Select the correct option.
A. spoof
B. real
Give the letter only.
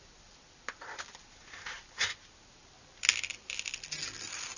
B